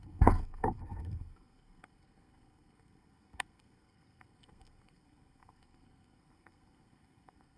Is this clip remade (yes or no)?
yes